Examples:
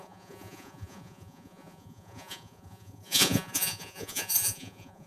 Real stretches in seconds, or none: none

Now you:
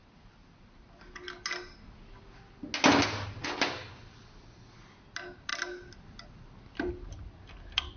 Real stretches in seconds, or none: 0.0-8.0

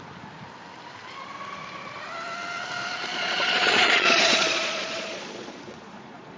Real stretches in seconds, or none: 0.0-3.1

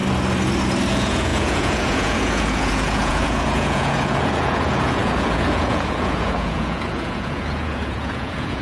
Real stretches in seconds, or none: 0.0-0.9